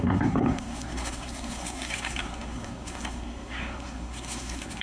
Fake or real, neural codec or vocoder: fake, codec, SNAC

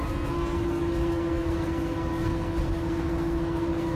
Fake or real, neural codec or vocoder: fake, codec, SNAC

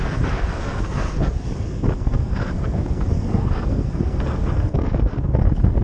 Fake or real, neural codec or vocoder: fake, codec, SNAC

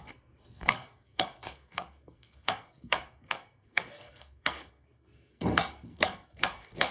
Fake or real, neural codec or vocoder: fake, codec, SNAC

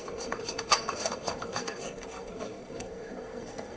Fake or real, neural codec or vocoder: fake, codec, SNAC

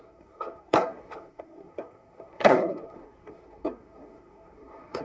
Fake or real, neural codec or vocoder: fake, codec, SNAC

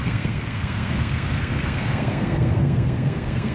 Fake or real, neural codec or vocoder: fake, codec, SNAC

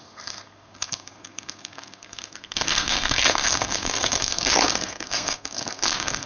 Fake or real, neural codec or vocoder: fake, codec, SNAC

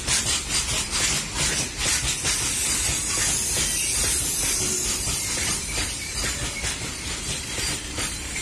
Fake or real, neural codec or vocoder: real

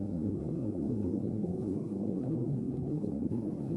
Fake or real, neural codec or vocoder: fake, codec, SNAC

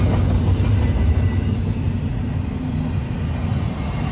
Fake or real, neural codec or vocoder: real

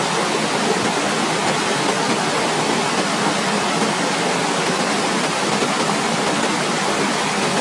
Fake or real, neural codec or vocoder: real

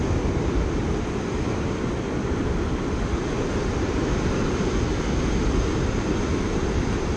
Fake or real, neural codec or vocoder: real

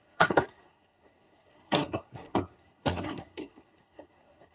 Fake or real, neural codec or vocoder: fake, codec, SNAC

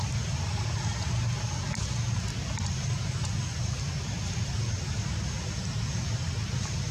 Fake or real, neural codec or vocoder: real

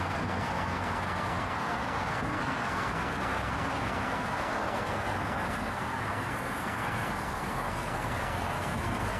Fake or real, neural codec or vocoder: fake, codec, SNAC